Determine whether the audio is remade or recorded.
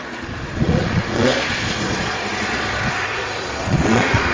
remade